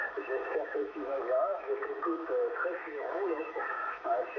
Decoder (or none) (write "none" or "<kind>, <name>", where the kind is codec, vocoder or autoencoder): autoencoder, DAC-VAE